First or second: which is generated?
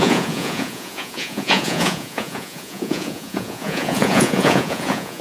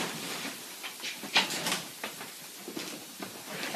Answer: first